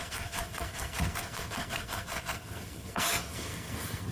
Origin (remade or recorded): remade